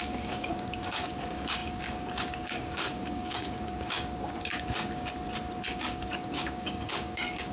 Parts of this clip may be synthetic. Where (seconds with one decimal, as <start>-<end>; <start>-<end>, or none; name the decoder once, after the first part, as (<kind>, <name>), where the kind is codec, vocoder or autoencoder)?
0.0-5.1 (codec, DAC); 5.7-7.5